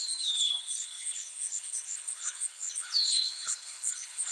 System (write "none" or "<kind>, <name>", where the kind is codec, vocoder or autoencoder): codec, HILCodec